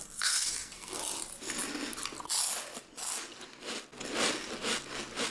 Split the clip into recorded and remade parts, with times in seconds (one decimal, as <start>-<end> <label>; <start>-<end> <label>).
0.0-1.0 remade; 1.0-5.3 recorded